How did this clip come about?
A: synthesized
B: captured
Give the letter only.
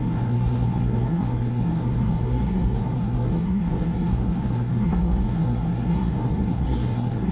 A